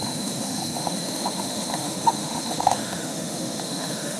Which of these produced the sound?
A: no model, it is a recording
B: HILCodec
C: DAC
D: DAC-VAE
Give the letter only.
D